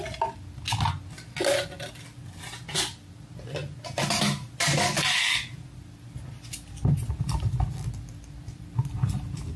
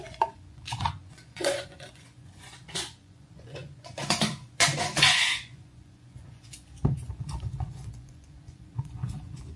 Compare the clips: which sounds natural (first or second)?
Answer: first